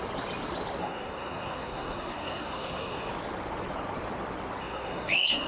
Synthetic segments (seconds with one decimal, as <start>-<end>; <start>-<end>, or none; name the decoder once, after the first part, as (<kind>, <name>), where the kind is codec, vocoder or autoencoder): 0.8-3.1 (codec, SNAC); 4.6-5.5